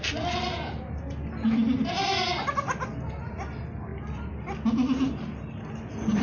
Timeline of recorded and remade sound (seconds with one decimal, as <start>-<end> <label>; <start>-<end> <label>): 0.0-6.2 recorded